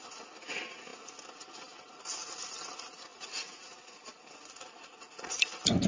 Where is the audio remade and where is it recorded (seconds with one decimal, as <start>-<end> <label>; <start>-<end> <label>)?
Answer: 0.0-3.1 recorded; 3.1-5.4 remade; 5.4-5.9 recorded